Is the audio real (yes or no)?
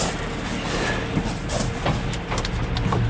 yes